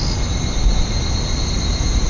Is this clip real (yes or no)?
yes